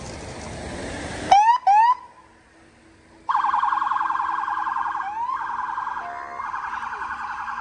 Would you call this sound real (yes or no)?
yes